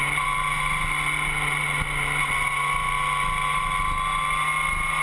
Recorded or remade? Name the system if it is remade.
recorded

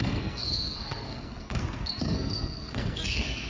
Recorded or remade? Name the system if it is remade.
remade, codec, SNAC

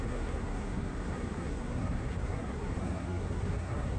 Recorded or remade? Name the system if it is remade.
remade, codec, SNAC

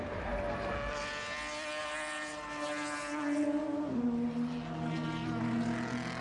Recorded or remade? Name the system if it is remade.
recorded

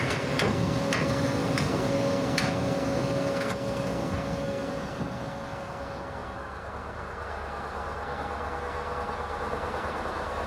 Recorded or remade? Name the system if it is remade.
remade, codec, SNAC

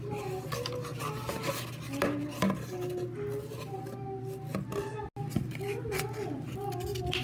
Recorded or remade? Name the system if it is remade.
recorded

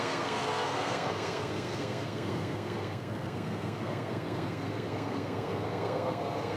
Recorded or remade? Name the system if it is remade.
remade, codec, SNAC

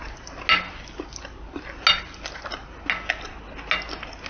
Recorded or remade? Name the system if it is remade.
recorded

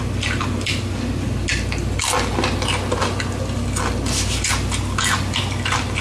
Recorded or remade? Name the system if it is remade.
recorded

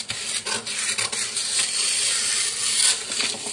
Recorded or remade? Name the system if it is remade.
recorded